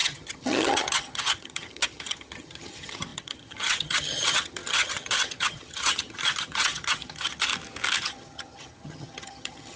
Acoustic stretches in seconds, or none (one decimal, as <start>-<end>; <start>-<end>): 7.5-8.0